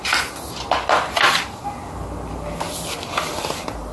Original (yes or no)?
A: yes